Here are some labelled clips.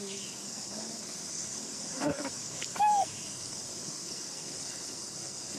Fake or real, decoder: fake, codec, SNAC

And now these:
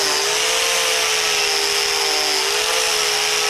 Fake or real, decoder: real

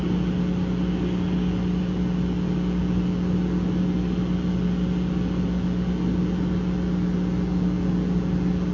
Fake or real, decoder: real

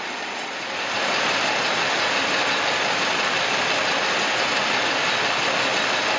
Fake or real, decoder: real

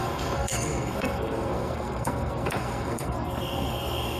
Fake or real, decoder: fake, codec, SNAC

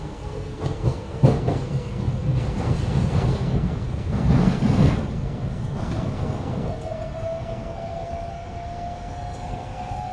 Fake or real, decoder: fake, codec, SNAC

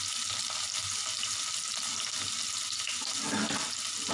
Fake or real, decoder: real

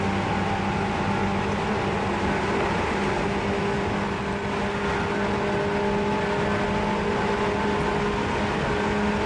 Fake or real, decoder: real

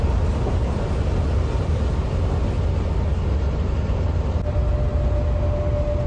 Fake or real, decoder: real